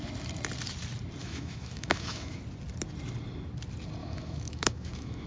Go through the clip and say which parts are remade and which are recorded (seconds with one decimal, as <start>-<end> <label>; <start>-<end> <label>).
0.0-1.2 recorded; 1.2-2.4 remade; 2.4-4.0 recorded; 4.0-5.3 remade